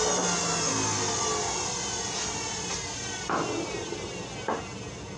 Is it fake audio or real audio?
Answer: real